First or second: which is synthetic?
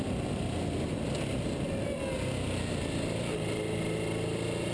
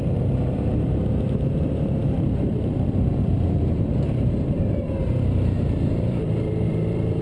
second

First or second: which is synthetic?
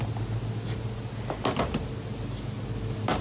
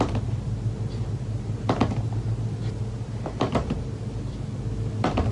second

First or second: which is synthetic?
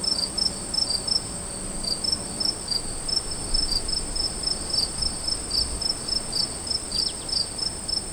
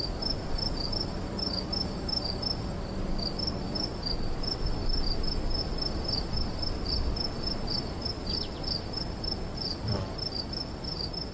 second